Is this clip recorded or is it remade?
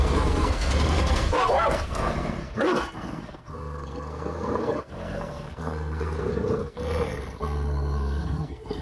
remade